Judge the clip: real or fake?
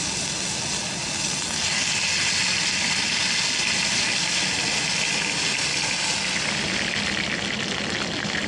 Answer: real